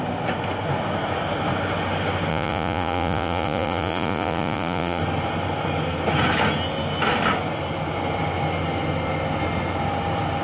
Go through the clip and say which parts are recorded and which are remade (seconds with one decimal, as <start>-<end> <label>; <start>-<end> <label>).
0.0-2.3 recorded; 2.3-5.0 remade; 5.0-10.4 recorded